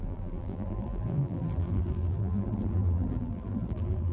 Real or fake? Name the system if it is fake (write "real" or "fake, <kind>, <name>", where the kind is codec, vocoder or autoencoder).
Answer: fake, vocoder, BigVGAN v2